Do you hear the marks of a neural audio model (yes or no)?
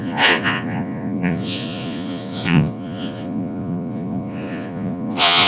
yes